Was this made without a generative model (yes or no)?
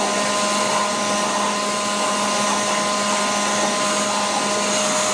yes